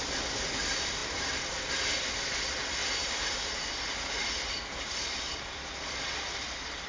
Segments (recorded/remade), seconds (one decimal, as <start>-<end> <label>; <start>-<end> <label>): 0.0-1.0 recorded; 1.0-1.7 remade; 1.7-2.8 recorded; 2.8-3.7 remade; 3.7-4.2 recorded; 4.2-5.7 remade; 5.7-6.9 recorded